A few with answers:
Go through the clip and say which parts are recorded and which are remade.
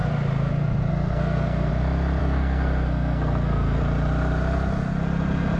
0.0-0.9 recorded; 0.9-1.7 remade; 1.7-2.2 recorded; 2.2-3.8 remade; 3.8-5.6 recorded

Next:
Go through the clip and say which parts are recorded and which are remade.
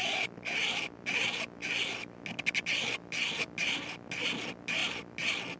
0.0-5.6 recorded